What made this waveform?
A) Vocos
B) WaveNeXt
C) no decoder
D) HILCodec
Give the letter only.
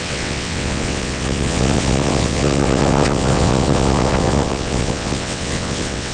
B